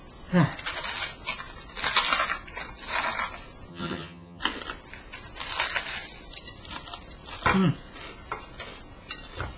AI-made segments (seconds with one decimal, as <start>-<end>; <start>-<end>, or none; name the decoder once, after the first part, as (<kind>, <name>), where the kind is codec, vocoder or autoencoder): 3.7-4.4 (vocoder, HiFi-GAN)